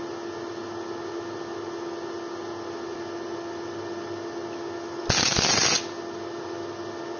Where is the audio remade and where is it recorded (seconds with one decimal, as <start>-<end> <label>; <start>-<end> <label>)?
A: 0.0-7.2 recorded